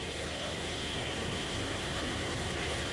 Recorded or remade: remade